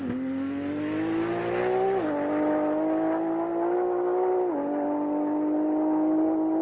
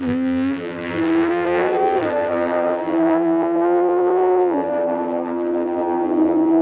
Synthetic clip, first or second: second